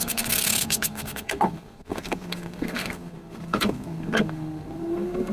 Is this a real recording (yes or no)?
no